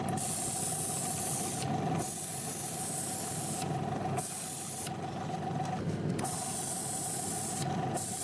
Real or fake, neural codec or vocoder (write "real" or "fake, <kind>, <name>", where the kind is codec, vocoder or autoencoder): real